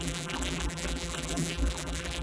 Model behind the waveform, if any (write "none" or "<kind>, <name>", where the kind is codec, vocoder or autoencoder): vocoder, BigVGAN v2